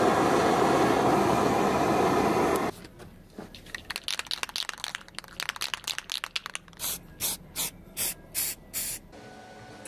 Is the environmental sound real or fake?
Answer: real